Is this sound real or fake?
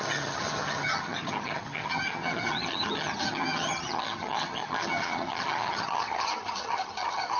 fake